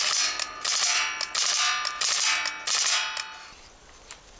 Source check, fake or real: real